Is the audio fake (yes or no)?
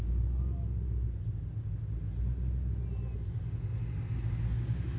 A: no